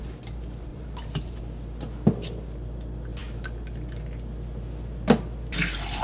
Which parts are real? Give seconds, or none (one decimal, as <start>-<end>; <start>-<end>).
0.0-0.7; 1.4-6.0